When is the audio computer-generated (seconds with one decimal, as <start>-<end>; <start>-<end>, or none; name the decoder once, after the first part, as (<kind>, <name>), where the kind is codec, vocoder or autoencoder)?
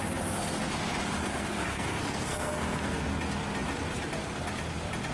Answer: 1.2-3.1 (codec, SNAC)